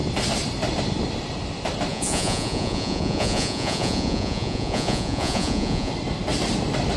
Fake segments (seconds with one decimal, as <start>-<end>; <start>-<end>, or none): 1.9-5.9